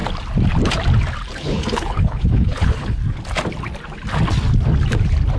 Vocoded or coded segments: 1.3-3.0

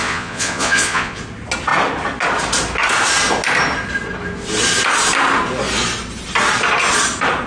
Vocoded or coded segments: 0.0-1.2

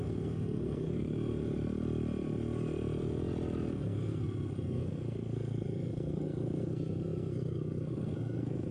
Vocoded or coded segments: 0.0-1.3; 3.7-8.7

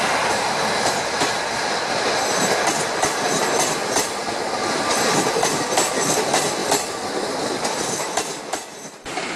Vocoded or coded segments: 3.8-5.5; 6.6-7.5

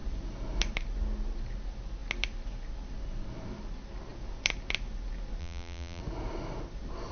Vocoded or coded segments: 5.4-6.0